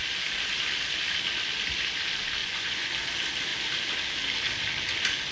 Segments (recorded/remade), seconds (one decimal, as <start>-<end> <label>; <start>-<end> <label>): 0.0-2.4 recorded; 2.4-2.9 remade; 2.9-5.3 recorded